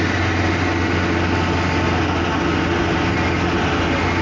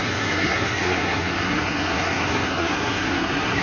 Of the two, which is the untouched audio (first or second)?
first